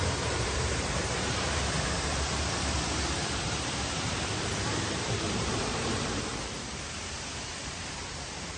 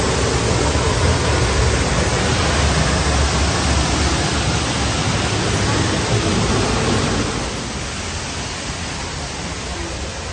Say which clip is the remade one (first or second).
first